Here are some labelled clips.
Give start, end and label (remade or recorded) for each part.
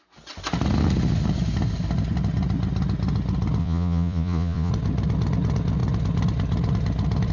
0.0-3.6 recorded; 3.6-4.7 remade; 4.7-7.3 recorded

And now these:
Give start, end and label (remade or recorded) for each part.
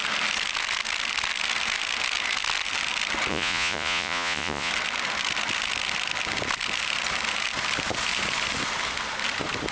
0.0-3.3 recorded; 3.3-4.7 remade; 4.7-9.7 recorded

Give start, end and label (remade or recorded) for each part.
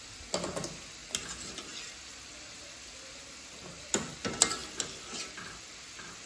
0.0-6.3 recorded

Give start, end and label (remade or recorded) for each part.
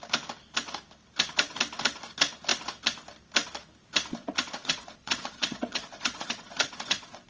0.0-4.2 recorded; 4.2-7.3 remade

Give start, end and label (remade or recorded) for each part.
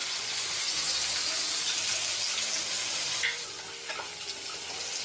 0.0-1.0 remade; 1.0-2.8 recorded; 2.8-3.6 remade; 3.6-5.0 recorded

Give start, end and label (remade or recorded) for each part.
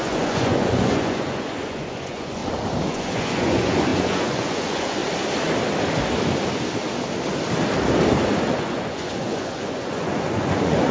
0.0-2.4 remade; 2.4-2.9 recorded; 2.9-5.0 remade; 5.0-8.4 recorded; 8.4-10.9 remade